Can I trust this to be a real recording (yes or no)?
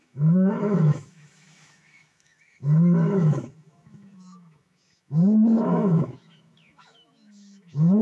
no